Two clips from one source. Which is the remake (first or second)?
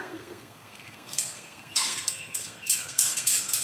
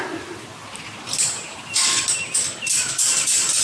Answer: first